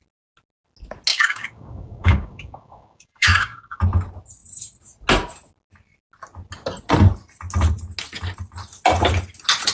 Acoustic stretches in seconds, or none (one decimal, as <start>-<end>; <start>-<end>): 0.0-1.1; 3.8-9.7